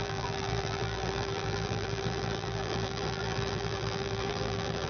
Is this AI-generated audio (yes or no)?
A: yes